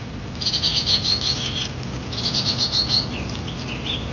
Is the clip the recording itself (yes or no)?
yes